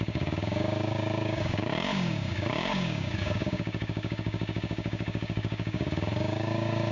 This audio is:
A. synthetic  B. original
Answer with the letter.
A